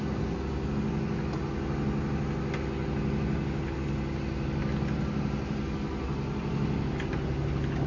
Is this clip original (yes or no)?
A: yes